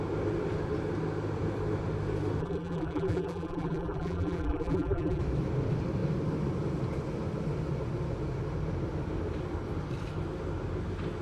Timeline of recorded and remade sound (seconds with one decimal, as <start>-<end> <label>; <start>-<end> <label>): 0.0-2.4 recorded; 2.4-5.2 remade; 5.2-11.2 recorded